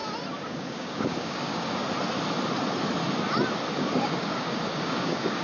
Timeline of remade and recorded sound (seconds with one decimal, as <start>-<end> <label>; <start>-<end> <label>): 0.0-0.5 recorded; 0.5-1.8 remade; 1.8-3.8 recorded; 3.8-5.4 remade

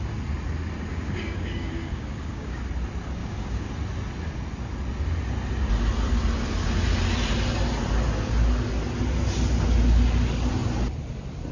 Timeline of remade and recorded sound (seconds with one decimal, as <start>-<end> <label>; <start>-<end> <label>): 0.0-0.9 recorded; 0.9-2.6 remade; 2.6-3.2 recorded; 3.2-3.7 remade; 3.7-11.5 recorded

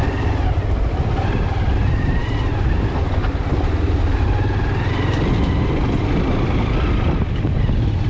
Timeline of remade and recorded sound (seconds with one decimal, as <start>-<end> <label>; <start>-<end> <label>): 0.0-8.1 recorded

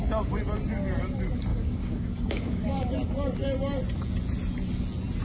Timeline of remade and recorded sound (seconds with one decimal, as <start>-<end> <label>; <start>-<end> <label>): 0.0-1.5 recorded; 1.5-2.9 remade; 2.9-5.2 recorded